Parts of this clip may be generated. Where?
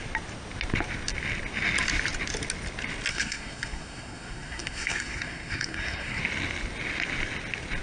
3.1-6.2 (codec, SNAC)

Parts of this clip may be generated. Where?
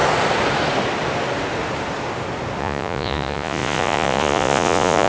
2.6-5.1 (vocoder, Vocos)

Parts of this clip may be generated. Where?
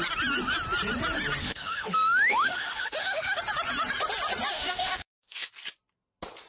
1.4-3.4 (autoencoder, DAC-VAE); 4.5-5.5